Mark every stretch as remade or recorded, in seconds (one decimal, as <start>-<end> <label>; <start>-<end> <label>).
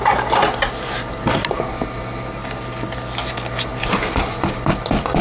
0.0-3.7 recorded; 3.7-5.2 remade